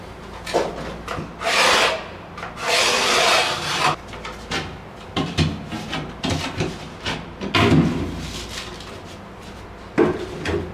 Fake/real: real